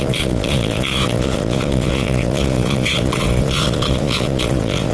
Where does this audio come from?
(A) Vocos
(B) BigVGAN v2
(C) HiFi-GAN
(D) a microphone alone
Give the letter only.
A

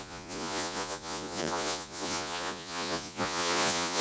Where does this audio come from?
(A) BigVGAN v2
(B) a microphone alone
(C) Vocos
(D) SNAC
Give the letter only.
C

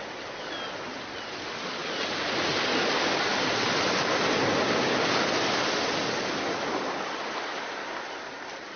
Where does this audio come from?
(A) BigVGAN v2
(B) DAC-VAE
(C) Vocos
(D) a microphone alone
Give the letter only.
D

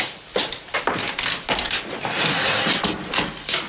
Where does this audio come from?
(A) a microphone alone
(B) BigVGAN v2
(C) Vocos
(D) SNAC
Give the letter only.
A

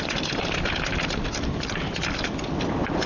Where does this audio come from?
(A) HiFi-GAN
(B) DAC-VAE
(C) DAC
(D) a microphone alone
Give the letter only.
D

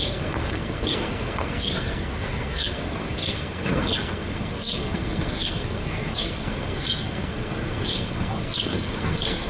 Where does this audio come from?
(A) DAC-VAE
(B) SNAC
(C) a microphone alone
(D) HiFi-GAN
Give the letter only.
B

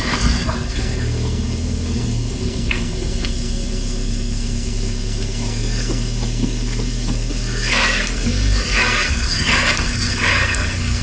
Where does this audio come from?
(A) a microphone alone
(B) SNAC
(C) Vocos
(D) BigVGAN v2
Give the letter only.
B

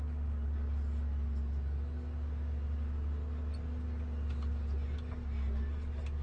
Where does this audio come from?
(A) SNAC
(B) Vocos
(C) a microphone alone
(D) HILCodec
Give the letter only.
C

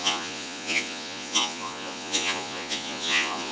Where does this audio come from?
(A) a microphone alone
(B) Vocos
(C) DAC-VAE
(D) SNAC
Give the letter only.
B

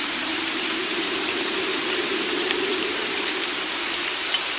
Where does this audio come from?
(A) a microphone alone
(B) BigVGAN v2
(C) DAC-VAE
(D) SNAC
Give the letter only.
B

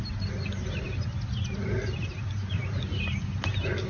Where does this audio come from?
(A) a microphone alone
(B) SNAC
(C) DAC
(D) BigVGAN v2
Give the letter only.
A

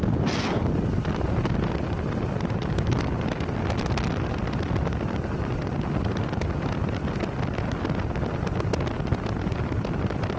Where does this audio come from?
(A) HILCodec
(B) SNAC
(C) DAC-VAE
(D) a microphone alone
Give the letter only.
D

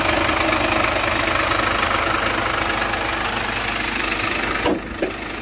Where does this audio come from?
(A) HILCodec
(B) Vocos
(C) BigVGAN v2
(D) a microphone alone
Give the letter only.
D